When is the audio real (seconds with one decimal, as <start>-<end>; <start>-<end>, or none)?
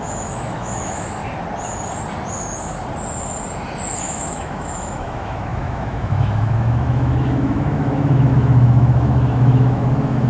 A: 1.2-4.0